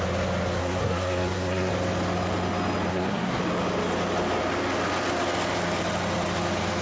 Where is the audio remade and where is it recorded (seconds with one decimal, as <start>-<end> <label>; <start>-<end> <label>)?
0.0-0.6 recorded; 0.6-1.7 remade; 1.7-2.9 recorded; 2.9-3.4 remade; 3.4-6.8 recorded